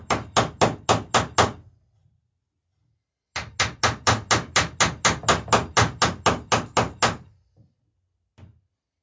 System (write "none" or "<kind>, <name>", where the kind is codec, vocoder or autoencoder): none